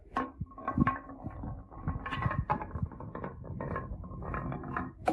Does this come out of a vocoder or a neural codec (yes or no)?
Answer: no